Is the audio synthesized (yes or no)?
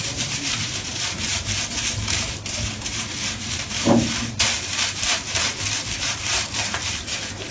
yes